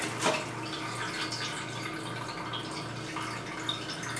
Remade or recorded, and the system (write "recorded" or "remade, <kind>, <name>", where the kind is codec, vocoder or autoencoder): recorded